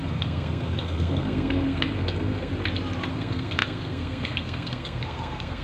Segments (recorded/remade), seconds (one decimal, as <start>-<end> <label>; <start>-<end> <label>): 0.0-2.5 remade; 2.5-3.1 recorded; 3.1-5.6 remade

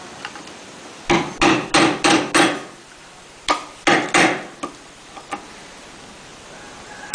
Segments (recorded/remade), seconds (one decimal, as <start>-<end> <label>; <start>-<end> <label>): 0.0-7.1 recorded